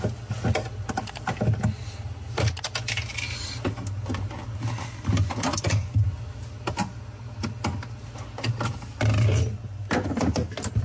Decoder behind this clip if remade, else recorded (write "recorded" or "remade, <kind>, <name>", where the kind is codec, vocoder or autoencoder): recorded